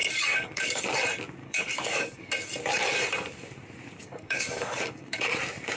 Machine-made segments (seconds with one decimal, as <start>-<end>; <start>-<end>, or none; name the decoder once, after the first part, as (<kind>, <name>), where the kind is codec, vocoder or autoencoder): 0.0-0.8 (codec, DAC); 1.4-2.3; 4.0-5.3